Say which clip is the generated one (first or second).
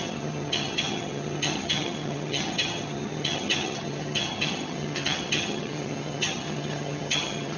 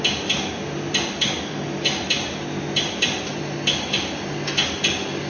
first